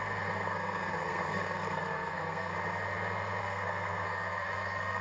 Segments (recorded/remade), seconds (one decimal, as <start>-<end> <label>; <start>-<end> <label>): 0.0-2.5 remade; 2.5-3.4 recorded; 3.4-5.0 remade